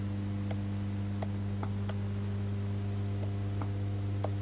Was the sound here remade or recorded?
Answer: recorded